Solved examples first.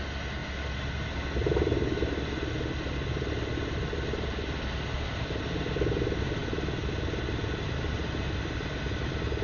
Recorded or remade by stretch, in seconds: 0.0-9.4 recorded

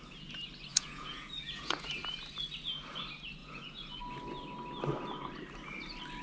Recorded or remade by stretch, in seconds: 0.0-0.7 recorded; 0.7-1.9 remade; 1.9-3.4 recorded; 3.4-4.0 remade; 4.0-6.2 recorded